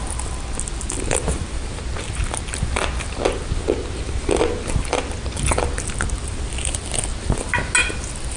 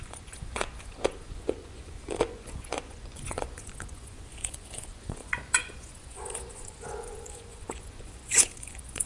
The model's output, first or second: second